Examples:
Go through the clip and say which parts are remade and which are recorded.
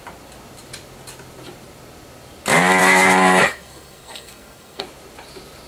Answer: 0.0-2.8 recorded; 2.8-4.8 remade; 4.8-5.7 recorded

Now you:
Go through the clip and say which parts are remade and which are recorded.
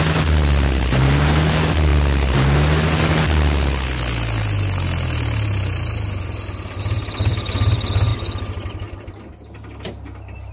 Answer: 0.0-10.5 recorded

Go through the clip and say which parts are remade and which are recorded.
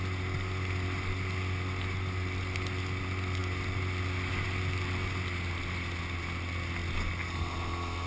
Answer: 0.0-8.1 recorded